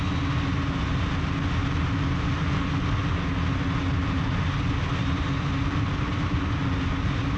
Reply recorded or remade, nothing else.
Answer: recorded